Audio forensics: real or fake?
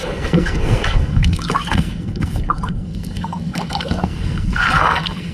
fake